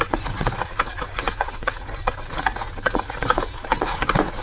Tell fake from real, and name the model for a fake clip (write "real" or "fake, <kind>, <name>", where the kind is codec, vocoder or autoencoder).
fake, vocoder, Vocos